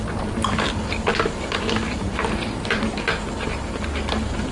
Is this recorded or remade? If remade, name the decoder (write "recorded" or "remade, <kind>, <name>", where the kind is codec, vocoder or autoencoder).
recorded